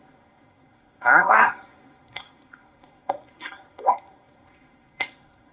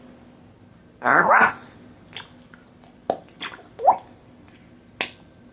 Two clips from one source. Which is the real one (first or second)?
second